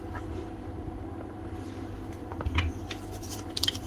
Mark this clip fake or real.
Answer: fake